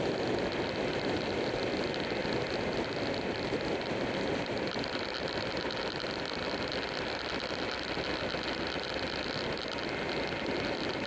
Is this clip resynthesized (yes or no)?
no